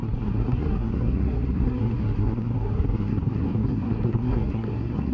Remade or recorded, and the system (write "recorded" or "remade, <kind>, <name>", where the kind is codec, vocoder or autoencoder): remade, codec, SNAC